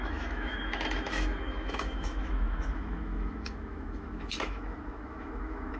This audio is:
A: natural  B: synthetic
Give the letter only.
B